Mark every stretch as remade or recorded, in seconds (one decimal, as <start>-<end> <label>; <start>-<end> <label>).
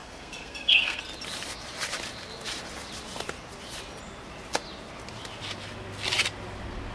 0.0-1.0 remade; 1.0-6.9 recorded